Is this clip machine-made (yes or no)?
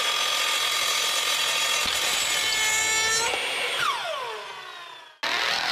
no